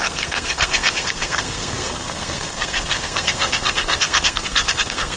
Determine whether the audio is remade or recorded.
remade